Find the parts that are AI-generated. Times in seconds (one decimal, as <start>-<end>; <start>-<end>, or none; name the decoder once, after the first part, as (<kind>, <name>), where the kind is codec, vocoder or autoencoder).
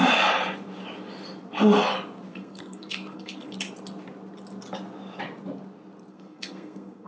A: 2.3-3.5 (codec, SNAC); 6.1-7.1